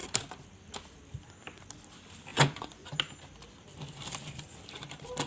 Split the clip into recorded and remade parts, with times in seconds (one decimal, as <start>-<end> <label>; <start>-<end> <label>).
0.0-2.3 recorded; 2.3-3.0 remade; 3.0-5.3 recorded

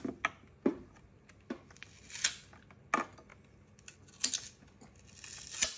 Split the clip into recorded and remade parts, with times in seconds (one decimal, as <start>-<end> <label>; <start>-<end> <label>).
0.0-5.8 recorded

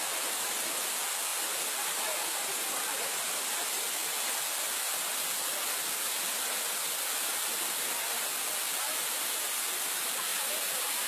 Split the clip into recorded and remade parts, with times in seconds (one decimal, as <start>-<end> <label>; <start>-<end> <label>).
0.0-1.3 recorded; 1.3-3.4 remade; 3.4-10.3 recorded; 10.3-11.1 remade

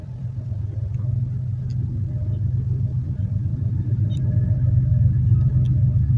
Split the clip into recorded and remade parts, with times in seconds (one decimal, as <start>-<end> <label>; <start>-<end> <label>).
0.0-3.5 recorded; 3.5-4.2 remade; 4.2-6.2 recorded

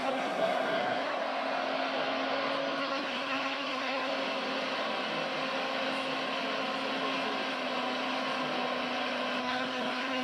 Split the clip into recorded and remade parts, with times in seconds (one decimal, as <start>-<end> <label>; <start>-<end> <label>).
0.0-1.2 remade; 1.2-2.8 recorded; 2.8-4.1 remade; 4.1-9.4 recorded; 9.4-10.2 remade

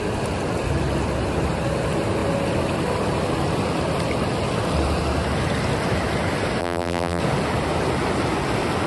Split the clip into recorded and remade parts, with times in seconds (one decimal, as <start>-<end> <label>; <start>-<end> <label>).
0.0-6.6 recorded; 6.6-7.2 remade; 7.2-8.9 recorded